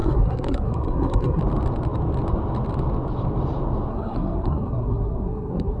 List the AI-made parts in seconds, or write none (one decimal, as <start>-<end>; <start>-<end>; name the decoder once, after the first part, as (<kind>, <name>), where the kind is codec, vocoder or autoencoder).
0.0-1.4 (codec, SNAC); 3.9-5.8